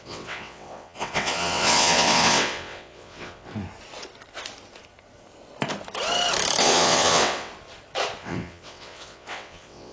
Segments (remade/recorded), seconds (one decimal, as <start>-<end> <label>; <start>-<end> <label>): 0.0-3.5 remade; 3.5-6.6 recorded; 6.6-7.5 remade; 7.5-8.2 recorded; 8.2-9.9 remade